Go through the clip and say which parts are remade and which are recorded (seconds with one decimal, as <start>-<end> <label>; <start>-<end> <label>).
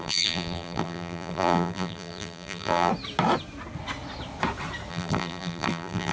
0.0-2.9 remade; 2.9-4.9 recorded; 4.9-6.1 remade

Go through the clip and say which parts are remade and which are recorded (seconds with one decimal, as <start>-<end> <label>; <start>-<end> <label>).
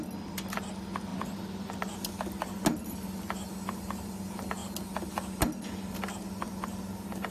0.0-7.3 recorded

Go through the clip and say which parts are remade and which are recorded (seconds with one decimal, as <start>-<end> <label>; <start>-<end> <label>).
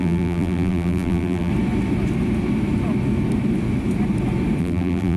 0.0-1.5 remade; 1.5-4.6 recorded; 4.6-5.2 remade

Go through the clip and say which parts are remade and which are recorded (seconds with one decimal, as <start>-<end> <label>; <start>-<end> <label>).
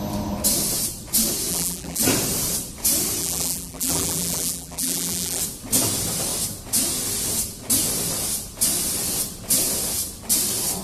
0.0-1.5 recorded; 1.5-2.0 remade; 2.0-3.2 recorded; 3.2-5.4 remade; 5.4-10.8 recorded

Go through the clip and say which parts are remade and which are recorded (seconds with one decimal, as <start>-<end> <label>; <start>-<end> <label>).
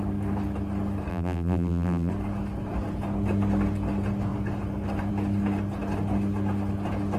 0.0-1.1 recorded; 1.1-2.1 remade; 2.1-7.2 recorded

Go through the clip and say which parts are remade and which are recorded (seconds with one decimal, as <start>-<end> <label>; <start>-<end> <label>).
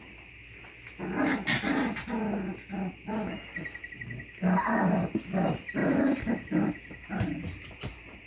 0.0-2.7 recorded; 2.7-3.9 remade; 3.9-5.8 recorded; 5.8-7.6 remade; 7.6-8.3 recorded